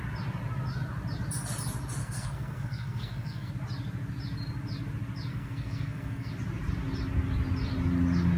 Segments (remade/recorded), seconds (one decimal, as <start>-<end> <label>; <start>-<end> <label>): 0.0-2.0 recorded; 2.0-3.5 remade; 3.5-5.3 recorded; 5.3-6.3 remade; 6.3-8.4 recorded